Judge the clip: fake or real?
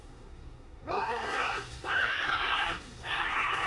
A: fake